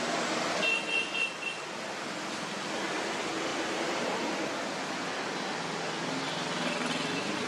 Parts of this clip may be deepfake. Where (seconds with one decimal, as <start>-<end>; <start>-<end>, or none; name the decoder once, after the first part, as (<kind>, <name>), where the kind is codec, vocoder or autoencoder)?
3.5-4.5 (vocoder, BigVGAN v2)